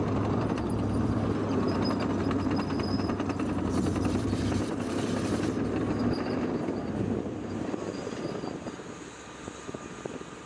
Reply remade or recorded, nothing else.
remade